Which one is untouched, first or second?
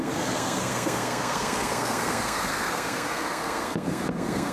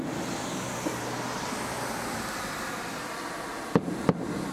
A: second